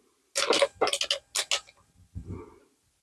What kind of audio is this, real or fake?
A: real